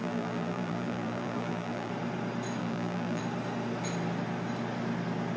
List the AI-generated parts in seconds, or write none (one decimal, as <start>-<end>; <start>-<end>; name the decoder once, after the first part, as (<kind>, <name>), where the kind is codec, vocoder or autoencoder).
0.0-1.9 (vocoder, BigVGAN v2); 2.6-3.2

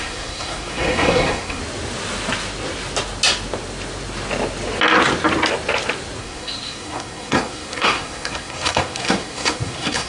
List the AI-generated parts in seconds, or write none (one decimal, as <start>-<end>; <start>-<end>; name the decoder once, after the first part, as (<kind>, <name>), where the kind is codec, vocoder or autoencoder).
0.0-1.6 (codec, SNAC); 6.2-10.1

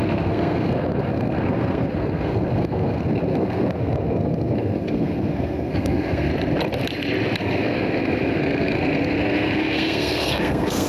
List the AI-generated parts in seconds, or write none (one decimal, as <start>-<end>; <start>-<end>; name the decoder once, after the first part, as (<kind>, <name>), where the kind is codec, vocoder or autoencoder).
0.0-6.3 (codec, SNAC); 7.4-10.9

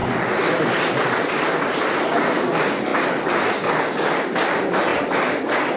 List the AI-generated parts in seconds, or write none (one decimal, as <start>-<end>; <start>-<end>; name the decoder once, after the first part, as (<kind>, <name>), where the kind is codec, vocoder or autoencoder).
none